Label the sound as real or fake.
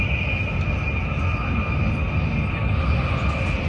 real